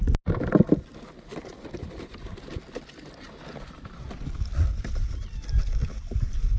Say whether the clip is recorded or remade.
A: recorded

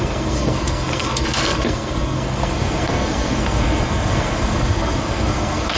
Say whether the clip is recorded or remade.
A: remade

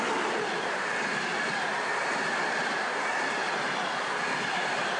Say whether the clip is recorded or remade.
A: recorded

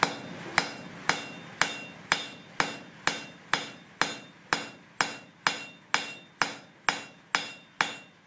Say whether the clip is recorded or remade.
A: recorded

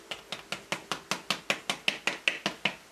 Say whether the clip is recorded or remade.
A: recorded